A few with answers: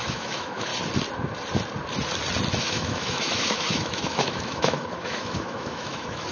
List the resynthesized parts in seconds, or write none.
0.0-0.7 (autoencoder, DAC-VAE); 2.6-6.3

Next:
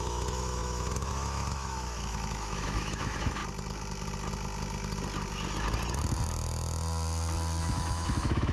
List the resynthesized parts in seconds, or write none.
0.0-3.4 (autoencoder, DAC-VAE); 7.6-8.5